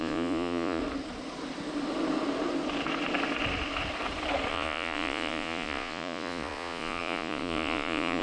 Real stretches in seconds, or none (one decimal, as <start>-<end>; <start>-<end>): 0.8-4.5